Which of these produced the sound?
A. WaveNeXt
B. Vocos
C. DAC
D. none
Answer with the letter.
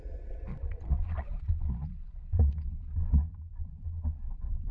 B